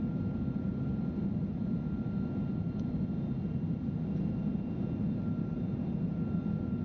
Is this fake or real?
real